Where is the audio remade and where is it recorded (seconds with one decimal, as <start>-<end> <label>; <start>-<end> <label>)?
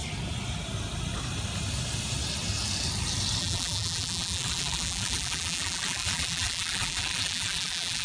0.0-3.4 recorded; 3.4-8.0 remade